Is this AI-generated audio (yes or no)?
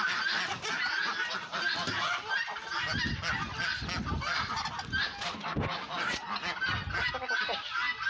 no